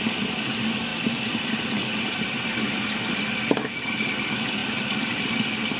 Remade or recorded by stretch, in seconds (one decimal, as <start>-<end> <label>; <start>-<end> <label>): 0.0-0.9 recorded; 0.9-3.1 remade; 3.1-4.6 recorded; 4.6-5.2 remade; 5.2-5.8 recorded